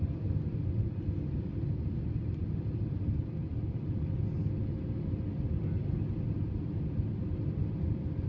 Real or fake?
real